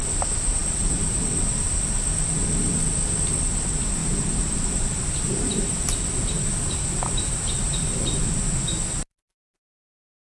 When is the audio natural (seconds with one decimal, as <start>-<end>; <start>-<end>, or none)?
0.0-4.0; 8.3-10.3